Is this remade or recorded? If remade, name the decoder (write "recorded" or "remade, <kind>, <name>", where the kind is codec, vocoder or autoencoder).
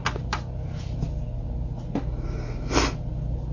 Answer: recorded